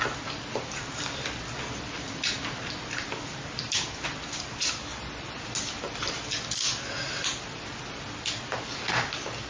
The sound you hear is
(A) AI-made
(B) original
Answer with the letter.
B